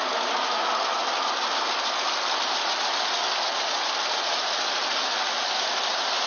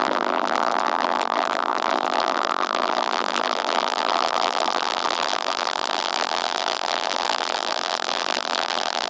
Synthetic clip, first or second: second